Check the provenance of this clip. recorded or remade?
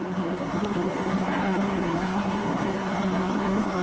remade